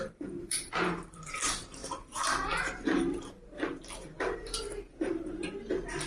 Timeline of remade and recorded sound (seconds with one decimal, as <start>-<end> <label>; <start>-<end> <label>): 0.0-6.1 remade